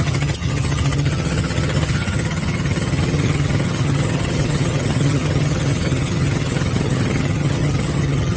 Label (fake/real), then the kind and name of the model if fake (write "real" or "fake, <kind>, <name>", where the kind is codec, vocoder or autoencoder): fake, vocoder, HiFi-GAN